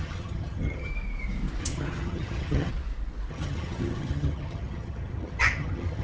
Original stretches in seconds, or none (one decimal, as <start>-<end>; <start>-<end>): 0.9-1.6; 2.7-3.3